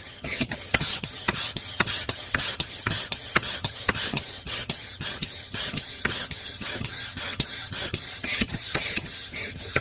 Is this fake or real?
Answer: fake